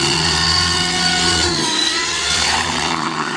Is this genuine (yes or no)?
no